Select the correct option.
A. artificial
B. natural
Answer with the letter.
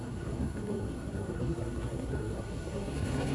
A